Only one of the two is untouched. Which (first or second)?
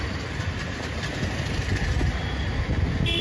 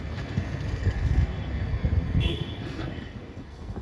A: first